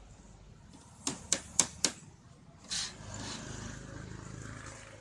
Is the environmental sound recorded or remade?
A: recorded